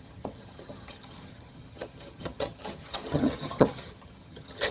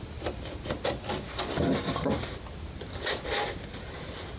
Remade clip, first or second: first